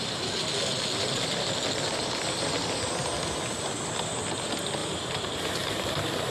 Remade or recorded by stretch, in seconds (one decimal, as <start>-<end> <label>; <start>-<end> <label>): 0.0-4.8 recorded; 4.8-6.3 remade